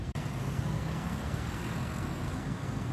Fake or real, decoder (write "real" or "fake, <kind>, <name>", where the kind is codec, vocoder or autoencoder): fake, codec, SNAC